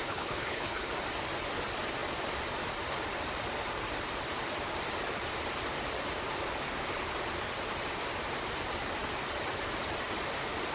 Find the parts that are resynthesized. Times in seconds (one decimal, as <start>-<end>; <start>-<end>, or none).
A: 0.0-0.9

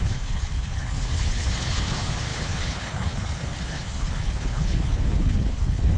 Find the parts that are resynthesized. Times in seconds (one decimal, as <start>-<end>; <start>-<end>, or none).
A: 0.0-6.0

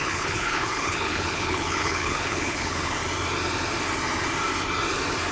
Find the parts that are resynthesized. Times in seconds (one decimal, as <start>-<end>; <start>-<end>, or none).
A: 0.0-3.0

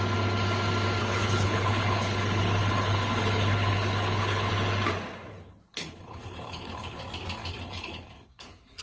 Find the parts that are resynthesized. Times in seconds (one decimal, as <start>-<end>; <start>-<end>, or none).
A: 1.0-4.5; 5.7-7.0; 7.4-8.8